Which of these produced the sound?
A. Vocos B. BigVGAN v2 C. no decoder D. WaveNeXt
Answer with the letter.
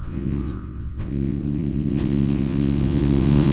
D